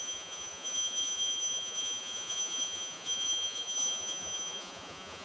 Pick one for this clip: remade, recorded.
remade